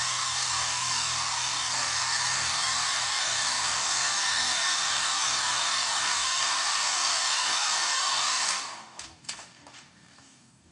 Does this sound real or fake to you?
fake